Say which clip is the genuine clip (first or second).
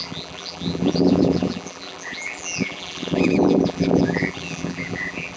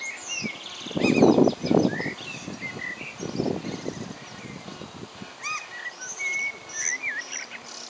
second